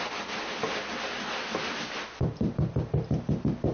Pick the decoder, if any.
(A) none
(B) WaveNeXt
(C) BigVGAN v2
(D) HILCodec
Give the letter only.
A